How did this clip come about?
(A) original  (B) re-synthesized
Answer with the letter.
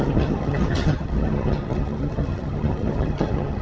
B